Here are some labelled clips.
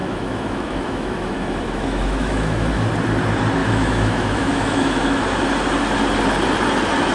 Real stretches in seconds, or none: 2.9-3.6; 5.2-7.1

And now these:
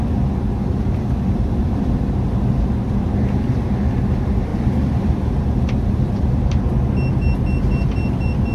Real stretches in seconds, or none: 0.0-8.5

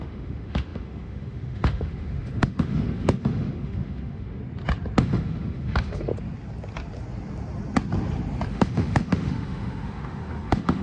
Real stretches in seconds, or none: 4.4-5.0; 6.1-8.5

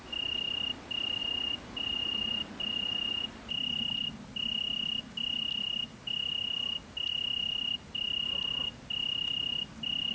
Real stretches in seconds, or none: 0.0-1.2; 3.5-10.1

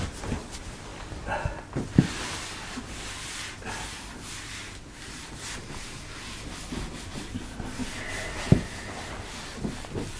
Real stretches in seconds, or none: 0.0-10.2